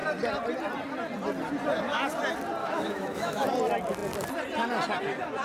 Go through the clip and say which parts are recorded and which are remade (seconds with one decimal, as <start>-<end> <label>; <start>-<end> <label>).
0.0-2.6 recorded; 2.6-3.5 remade; 3.5-5.4 recorded